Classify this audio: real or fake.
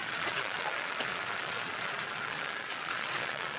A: fake